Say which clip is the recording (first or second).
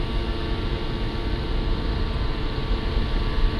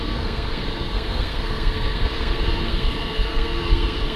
first